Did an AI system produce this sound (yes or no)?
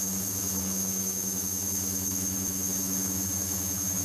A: yes